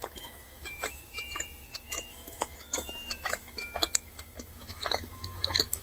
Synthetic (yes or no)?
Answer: yes